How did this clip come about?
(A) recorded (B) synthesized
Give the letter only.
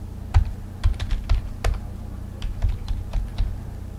A